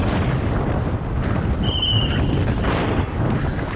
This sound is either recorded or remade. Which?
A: recorded